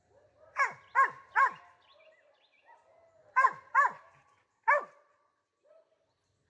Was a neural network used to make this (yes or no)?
no